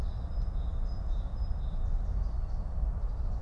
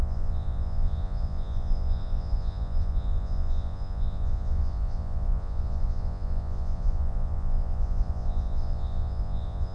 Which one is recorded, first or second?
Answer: first